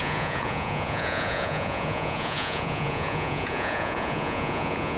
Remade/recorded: remade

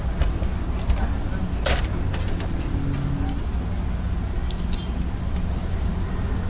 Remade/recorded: recorded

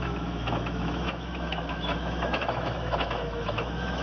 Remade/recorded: remade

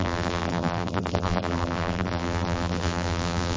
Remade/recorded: remade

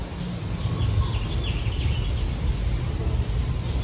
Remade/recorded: recorded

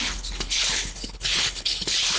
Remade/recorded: remade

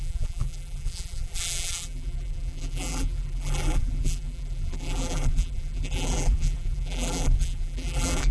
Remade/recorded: remade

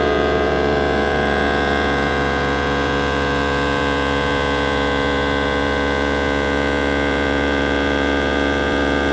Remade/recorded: remade